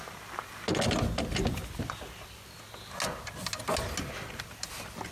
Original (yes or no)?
yes